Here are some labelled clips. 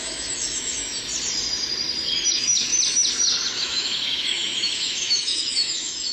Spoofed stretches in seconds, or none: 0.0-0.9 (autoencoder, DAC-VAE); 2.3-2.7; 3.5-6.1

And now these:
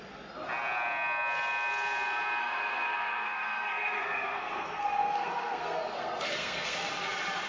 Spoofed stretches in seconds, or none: 2.4-6.9 (codec, SNAC)

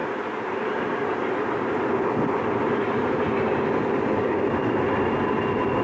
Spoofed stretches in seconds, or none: none